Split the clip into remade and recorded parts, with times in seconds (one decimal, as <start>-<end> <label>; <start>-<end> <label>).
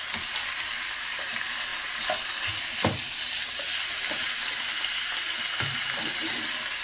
0.0-6.8 recorded